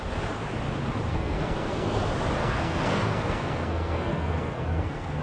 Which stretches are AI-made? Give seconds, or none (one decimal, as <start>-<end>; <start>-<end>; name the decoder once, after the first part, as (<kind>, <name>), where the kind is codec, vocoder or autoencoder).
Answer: 1.1-2.0 (codec, SNAC); 2.4-5.2

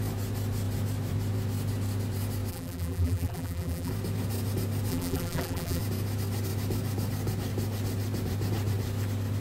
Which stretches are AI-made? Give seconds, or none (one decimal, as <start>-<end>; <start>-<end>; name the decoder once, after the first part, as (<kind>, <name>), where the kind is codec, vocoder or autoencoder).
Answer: 2.5-3.9 (vocoder, BigVGAN v2); 4.9-5.8

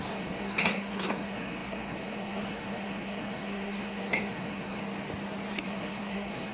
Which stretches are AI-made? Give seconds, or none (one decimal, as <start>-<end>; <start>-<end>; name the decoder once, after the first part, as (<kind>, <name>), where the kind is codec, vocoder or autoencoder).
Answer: 0.0-4.8 (codec, SNAC); 5.5-6.5

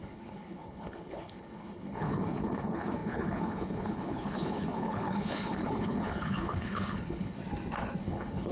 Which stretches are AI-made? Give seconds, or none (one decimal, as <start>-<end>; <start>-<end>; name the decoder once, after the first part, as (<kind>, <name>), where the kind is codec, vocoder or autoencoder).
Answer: 0.0-7.4 (codec, HILCodec); 8.0-8.5